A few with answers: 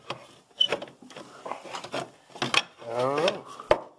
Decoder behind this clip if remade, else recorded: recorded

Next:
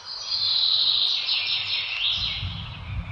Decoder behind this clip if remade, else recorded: recorded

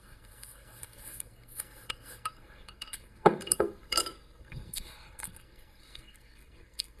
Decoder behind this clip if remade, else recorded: remade, codec, SNAC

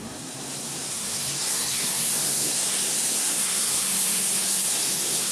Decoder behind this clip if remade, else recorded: remade, codec, SNAC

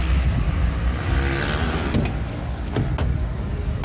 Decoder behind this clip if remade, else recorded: recorded